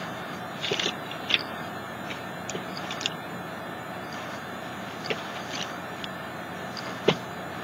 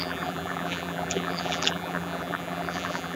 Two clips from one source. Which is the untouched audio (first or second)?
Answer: first